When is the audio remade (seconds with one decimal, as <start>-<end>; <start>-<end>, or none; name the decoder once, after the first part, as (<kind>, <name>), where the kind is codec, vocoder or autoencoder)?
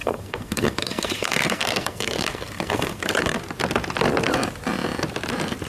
0.0-3.4 (codec, SNAC)